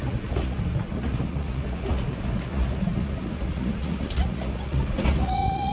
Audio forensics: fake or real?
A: fake